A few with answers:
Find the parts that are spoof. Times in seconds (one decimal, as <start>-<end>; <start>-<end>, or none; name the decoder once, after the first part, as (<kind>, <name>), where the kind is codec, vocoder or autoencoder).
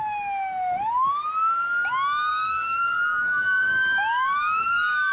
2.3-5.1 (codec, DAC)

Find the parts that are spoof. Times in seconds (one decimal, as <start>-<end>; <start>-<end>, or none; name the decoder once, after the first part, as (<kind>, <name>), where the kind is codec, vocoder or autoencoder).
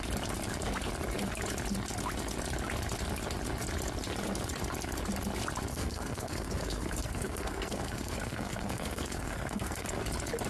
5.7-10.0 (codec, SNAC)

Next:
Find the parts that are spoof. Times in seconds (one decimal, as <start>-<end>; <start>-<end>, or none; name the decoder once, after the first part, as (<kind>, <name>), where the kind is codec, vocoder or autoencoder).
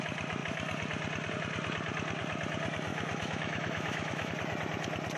2.9-4.3 (autoencoder, DAC-VAE)